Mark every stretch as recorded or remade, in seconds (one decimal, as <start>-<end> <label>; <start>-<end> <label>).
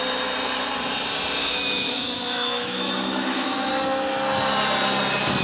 0.0-1.4 recorded; 1.4-3.7 remade; 3.7-5.4 recorded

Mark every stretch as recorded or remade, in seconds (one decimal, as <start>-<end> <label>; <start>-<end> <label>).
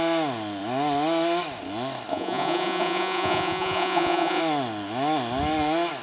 0.0-2.1 recorded; 2.1-4.4 remade; 4.4-6.0 recorded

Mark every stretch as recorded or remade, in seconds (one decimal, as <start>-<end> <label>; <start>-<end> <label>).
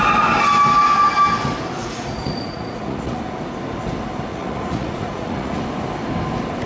0.0-1.8 recorded; 1.8-3.4 remade; 3.4-4.3 recorded; 4.3-5.6 remade; 5.6-6.7 recorded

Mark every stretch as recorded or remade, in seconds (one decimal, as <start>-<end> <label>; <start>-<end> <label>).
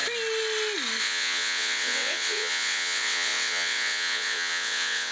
0.0-1.0 recorded; 1.0-5.1 remade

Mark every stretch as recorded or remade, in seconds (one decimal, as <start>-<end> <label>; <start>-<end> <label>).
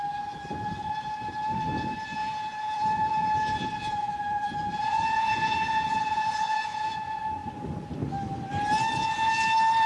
0.0-2.2 recorded; 2.2-6.9 remade; 6.9-9.9 recorded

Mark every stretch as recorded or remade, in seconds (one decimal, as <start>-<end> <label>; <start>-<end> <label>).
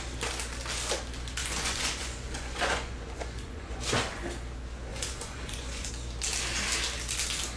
0.0-1.4 recorded; 1.4-4.2 remade; 4.2-4.9 recorded; 4.9-5.9 remade; 5.9-7.6 recorded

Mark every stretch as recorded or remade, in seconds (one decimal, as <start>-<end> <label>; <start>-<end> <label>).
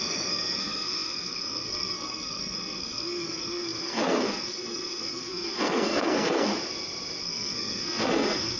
0.0-6.5 remade; 6.5-7.2 recorded; 7.2-8.6 remade